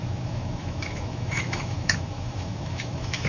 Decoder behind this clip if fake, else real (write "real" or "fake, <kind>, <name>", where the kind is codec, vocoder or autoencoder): fake, autoencoder, DAC-VAE